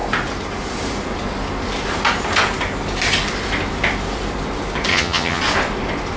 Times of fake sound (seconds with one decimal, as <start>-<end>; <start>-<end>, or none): 4.9-5.4